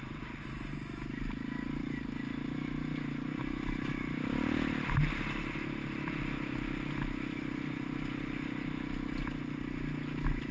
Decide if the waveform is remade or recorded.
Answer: recorded